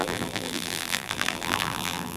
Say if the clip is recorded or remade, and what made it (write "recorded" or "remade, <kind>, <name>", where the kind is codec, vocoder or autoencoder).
remade, vocoder, BigVGAN v2